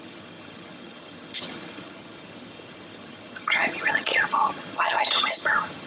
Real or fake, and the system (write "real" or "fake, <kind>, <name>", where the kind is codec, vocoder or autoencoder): fake, vocoder, HiFi-GAN